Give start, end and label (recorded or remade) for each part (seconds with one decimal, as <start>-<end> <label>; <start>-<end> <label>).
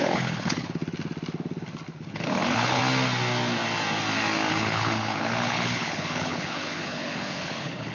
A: 0.0-0.8 remade; 0.8-2.0 recorded; 2.0-2.8 remade; 2.8-4.5 recorded; 4.5-7.9 remade